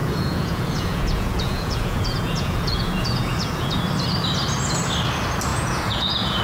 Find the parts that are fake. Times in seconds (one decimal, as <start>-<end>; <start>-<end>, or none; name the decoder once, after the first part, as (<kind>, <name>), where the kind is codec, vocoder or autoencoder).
0.0-3.8 (vocoder, Vocos); 5.5-6.4